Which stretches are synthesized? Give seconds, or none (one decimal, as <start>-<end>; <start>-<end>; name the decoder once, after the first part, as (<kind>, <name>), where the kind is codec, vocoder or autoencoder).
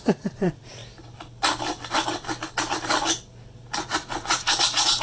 0.0-0.8 (vocoder, Vocos); 3.8-5.0